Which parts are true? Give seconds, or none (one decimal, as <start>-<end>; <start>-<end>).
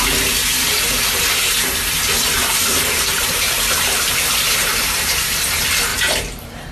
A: 0.0-2.4; 4.1-4.6; 5.1-5.9